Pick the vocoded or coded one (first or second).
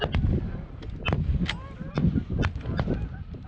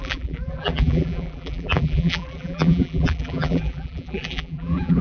second